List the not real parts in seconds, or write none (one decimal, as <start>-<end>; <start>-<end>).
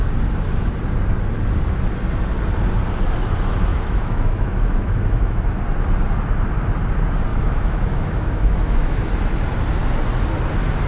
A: 3.7-5.4; 7.3-9.0